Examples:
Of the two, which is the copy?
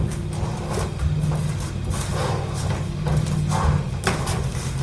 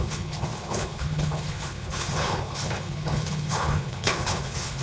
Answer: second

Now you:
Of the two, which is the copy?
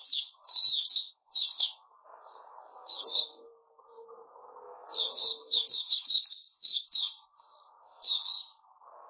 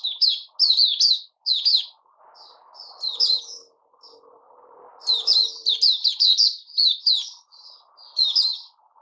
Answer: first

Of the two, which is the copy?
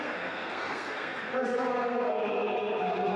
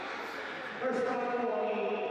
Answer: first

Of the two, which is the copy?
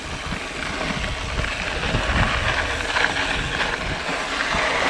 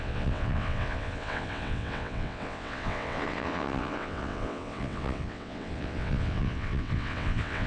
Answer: second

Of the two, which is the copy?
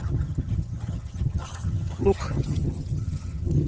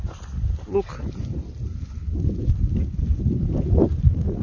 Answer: first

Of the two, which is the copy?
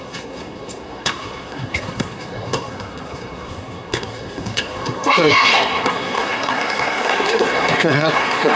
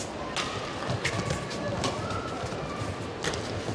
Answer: first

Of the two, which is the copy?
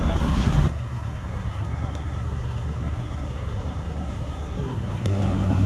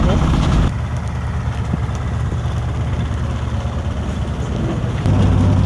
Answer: first